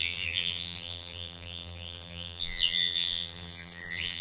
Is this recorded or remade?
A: remade